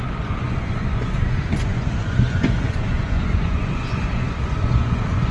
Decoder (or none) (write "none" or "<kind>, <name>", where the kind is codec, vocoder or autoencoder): vocoder, Vocos